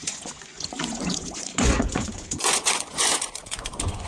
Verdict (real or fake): fake